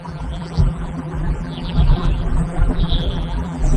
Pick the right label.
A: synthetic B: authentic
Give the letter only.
A